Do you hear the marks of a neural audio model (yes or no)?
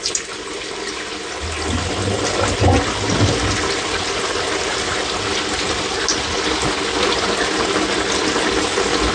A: no